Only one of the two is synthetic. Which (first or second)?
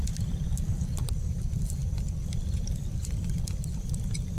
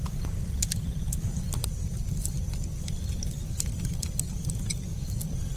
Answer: first